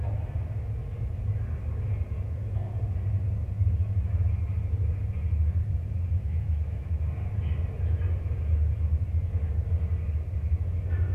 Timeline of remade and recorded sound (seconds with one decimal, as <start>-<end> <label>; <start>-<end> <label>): 0.0-6.2 recorded; 6.2-7.0 remade; 7.0-11.1 recorded